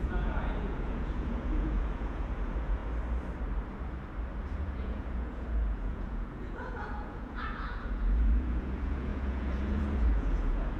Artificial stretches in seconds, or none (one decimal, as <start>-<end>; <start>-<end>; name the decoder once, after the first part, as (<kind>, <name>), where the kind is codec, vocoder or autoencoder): 0.0-2.8 (vocoder, Vocos); 4.4-10.8